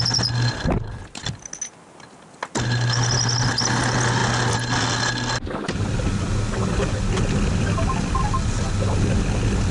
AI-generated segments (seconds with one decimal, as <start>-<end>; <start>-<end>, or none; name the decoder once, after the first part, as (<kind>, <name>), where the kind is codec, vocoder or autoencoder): none